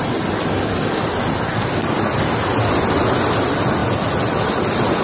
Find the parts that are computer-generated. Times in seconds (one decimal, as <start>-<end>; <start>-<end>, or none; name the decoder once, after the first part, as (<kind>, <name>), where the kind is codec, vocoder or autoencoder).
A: none